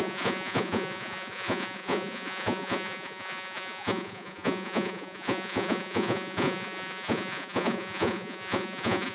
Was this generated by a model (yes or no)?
yes